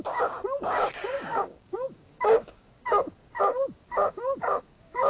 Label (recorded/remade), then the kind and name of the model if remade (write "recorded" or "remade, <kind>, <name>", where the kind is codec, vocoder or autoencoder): remade, codec, DAC